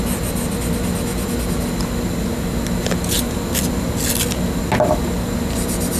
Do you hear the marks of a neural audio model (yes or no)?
no